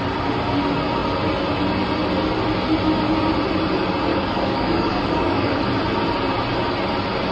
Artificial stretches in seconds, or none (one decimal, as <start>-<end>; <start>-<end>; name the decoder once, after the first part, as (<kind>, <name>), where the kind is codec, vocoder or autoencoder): 4.1-5.7 (codec, DAC)